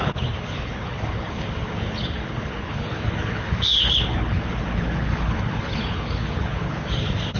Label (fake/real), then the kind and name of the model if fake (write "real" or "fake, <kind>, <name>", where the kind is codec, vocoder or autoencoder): fake, codec, HILCodec